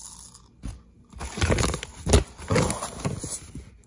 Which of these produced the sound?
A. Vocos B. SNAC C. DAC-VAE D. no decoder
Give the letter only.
D